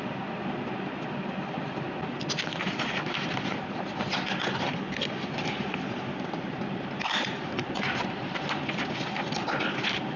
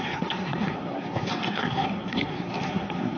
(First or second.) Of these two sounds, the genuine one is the first